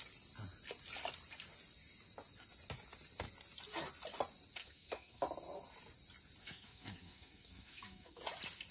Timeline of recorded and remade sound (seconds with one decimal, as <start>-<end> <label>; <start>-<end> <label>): 0.0-4.6 recorded; 4.6-5.2 remade; 5.2-6.4 recorded; 6.4-8.2 remade; 8.2-8.7 recorded